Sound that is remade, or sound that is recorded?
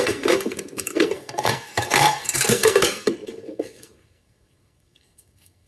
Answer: remade